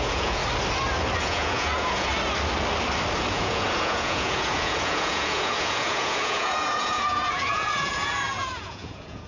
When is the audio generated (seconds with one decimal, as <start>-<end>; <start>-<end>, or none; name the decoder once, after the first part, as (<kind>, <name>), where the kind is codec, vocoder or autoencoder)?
0.0-0.4 (vocoder, Vocos); 1.2-2.1; 3.3-9.3